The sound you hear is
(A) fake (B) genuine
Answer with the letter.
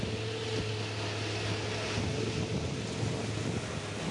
B